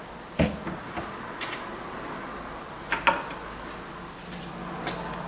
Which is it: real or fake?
real